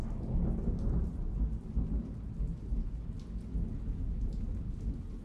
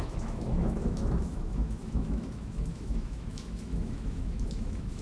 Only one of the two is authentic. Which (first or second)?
first